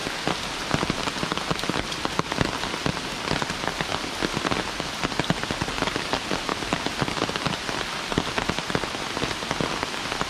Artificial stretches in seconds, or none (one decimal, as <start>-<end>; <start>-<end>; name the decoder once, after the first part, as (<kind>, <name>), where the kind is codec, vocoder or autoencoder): 3.9-6.0 (vocoder, BigVGAN v2); 6.5-7.4